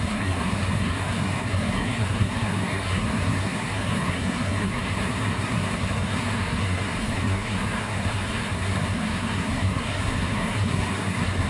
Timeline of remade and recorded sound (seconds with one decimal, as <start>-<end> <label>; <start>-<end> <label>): 0.0-11.5 remade

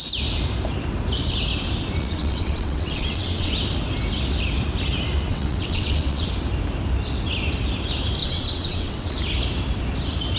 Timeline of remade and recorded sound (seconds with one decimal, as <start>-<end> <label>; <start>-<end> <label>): 0.0-2.0 recorded; 2.0-3.5 remade; 3.5-5.3 recorded; 5.3-6.3 remade; 6.3-8.2 recorded; 8.2-9.2 remade; 9.2-10.4 recorded

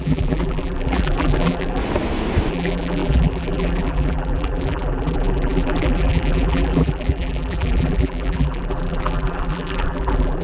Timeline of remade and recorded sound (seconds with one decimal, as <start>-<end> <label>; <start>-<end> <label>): 0.0-1.8 remade; 1.8-2.5 recorded; 2.5-10.4 remade

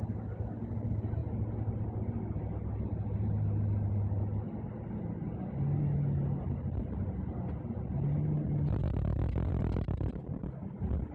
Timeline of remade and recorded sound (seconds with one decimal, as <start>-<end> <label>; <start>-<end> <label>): 0.0-11.1 recorded

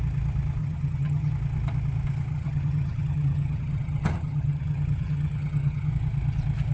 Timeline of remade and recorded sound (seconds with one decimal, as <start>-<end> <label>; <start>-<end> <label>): 0.0-0.6 recorded; 0.6-1.3 remade; 1.3-2.3 recorded; 2.3-5.9 remade; 5.9-6.7 recorded

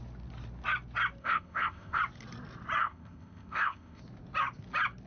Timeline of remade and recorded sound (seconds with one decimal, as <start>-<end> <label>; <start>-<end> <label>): 0.0-1.2 recorded; 1.2-2.0 remade; 2.0-2.8 recorded; 2.8-4.0 remade; 4.0-5.1 recorded

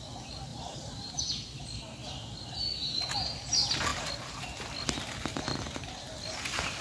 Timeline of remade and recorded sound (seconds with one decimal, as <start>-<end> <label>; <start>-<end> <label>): 0.0-0.5 recorded; 0.5-1.2 remade; 1.2-6.8 recorded